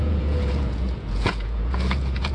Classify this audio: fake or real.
fake